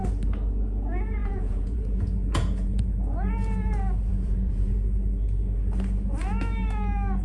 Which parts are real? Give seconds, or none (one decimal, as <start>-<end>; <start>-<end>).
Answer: 0.0-1.2; 2.9-4.1; 4.7-7.2